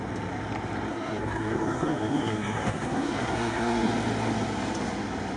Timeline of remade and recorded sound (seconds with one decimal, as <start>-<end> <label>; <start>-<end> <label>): 0.0-0.9 recorded; 0.9-3.9 remade; 3.9-5.4 recorded